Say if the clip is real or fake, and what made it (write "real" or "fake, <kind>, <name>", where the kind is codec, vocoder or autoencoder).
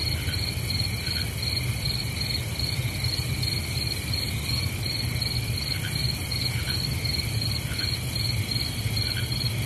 real